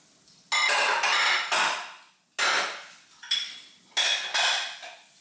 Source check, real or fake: real